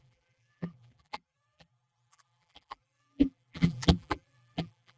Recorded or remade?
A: remade